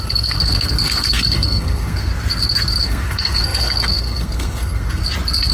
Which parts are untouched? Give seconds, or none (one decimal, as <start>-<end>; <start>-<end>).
2.1-2.8; 5.0-5.5